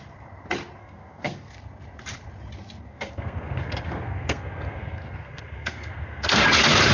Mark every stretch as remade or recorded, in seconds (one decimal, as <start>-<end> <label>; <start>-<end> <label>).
0.0-0.8 recorded; 0.8-1.5 remade; 1.5-2.9 recorded; 2.9-6.4 remade; 6.4-6.9 recorded